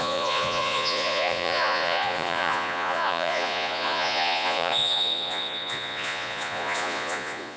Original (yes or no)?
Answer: no